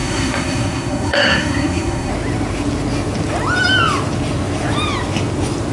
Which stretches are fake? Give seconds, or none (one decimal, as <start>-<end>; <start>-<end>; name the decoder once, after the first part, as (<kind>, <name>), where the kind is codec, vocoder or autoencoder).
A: 0.0-2.1 (codec, SNAC)